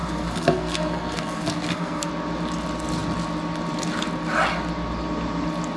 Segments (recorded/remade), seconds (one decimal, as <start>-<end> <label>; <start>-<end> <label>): 0.0-2.1 remade; 2.1-5.8 recorded